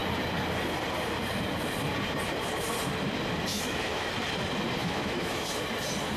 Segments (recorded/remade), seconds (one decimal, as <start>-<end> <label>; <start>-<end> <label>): 0.0-3.5 recorded; 3.5-4.1 remade; 4.1-4.8 recorded; 4.8-5.6 remade; 5.6-6.2 recorded